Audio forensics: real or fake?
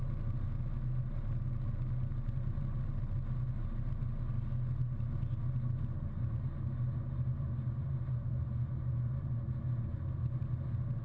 real